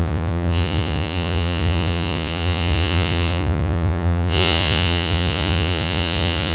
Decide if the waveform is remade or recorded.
remade